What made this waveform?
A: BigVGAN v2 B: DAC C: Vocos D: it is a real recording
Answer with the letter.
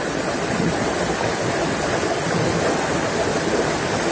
D